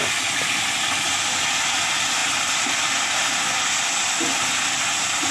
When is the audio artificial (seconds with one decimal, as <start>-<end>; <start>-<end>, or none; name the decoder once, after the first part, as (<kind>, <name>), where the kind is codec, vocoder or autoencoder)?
none